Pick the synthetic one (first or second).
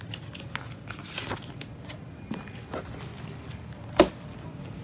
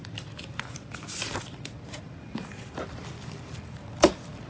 second